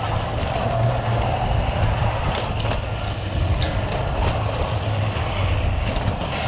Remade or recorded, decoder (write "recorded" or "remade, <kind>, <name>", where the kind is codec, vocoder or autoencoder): recorded